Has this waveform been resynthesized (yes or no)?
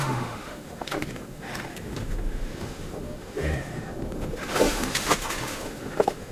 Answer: yes